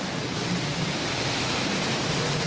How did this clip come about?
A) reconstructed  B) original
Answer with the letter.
A